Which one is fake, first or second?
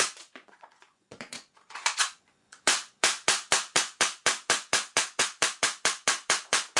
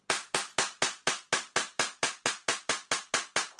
first